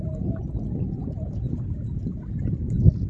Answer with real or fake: real